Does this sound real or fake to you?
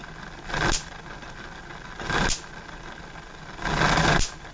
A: real